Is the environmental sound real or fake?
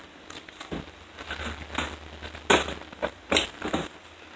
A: real